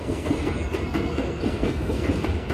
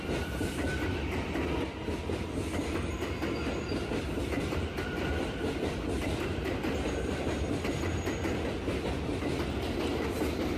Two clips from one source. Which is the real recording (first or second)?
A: second